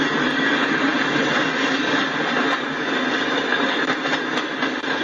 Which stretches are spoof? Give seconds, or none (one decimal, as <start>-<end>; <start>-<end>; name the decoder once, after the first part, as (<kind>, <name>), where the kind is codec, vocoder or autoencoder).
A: none